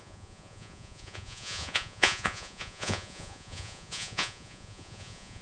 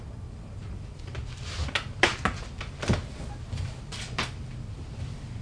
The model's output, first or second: first